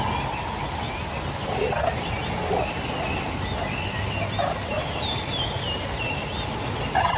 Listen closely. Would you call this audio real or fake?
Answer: real